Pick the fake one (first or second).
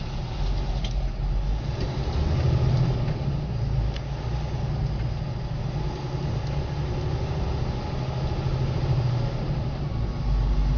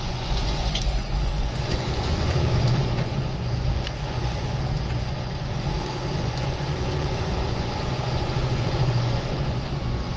second